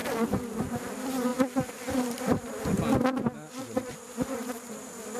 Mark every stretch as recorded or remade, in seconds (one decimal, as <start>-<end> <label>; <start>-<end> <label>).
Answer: 0.0-5.2 recorded